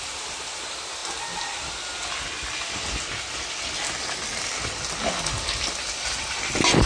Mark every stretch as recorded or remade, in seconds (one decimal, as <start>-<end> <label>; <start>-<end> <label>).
0.0-6.9 recorded